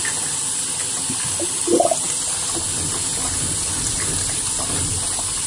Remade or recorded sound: recorded